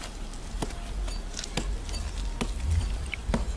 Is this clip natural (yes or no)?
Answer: yes